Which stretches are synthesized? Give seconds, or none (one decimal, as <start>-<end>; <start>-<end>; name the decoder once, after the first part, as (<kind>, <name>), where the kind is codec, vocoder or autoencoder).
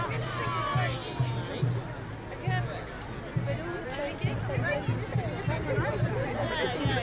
none